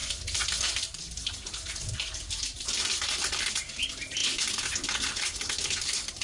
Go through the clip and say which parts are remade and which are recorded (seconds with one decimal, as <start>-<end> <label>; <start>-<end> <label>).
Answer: 0.0-4.2 remade; 4.2-5.1 recorded; 5.1-6.2 remade